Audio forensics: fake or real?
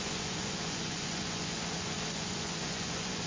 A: fake